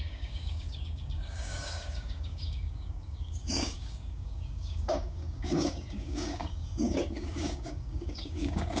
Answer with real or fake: fake